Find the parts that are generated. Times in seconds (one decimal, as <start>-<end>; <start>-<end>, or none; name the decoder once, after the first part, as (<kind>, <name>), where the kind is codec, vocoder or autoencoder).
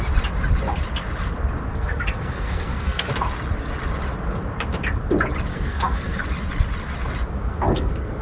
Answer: 1.7-3.1 (codec, SNAC); 5.5-6.2; 7.4-8.2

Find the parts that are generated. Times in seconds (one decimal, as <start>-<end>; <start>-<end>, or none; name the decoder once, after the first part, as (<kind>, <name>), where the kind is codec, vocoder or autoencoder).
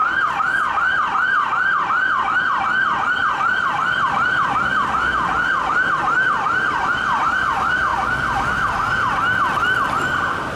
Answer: 3.2-5.7 (vocoder, BigVGAN v2)